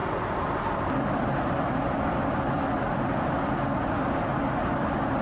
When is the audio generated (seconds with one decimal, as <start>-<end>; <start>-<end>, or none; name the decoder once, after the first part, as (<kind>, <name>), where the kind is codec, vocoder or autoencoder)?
none